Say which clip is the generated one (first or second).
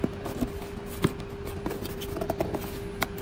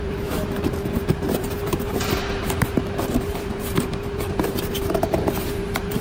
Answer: second